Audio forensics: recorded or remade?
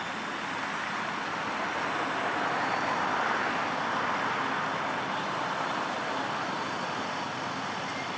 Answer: recorded